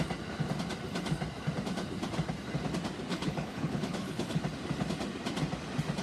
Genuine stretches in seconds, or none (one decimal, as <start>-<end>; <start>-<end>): 0.0-3.1; 4.4-6.0